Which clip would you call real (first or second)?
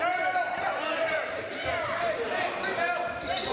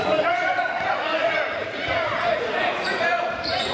first